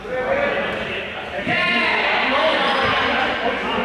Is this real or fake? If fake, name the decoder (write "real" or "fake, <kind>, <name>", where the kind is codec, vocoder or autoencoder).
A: real